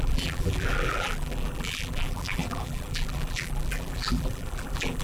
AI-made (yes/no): yes